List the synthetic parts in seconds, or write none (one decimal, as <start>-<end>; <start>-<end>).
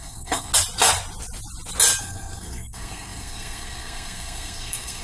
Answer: 0.0-0.5; 2.0-5.0